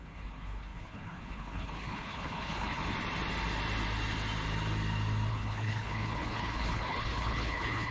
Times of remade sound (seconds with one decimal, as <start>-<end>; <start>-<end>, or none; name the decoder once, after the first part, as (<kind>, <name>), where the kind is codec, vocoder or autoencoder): 0.0-2.8 (codec, HILCodec); 5.3-7.9